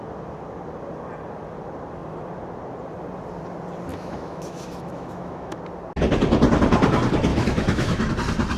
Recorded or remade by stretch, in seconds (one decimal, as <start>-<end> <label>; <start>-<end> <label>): 0.0-3.9 recorded; 3.9-5.6 remade; 5.6-7.3 recorded; 7.3-8.1 remade; 8.1-8.6 recorded